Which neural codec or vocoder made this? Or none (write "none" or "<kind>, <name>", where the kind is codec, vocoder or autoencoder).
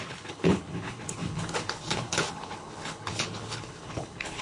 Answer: codec, HILCodec